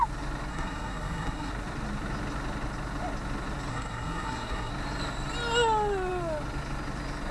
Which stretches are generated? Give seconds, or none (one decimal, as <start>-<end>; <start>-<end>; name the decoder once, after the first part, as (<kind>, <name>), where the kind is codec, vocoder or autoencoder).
0.5-1.5 (codec, SNAC); 3.7-4.7